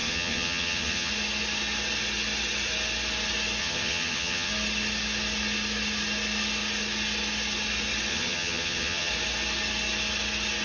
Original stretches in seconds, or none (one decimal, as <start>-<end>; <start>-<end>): 1.1-3.6; 4.5-8.1; 9.1-10.6